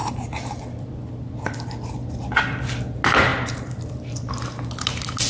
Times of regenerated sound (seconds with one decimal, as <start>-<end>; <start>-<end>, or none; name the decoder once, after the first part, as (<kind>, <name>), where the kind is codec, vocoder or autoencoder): 0.0-0.9 (vocoder, BigVGAN v2); 3.3-4.3